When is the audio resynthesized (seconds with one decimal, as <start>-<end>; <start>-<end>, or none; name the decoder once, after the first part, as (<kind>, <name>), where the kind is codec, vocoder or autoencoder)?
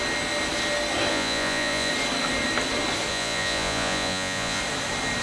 1.1-1.9 (vocoder, Vocos); 3.1-4.6